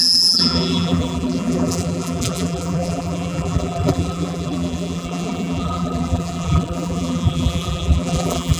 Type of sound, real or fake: fake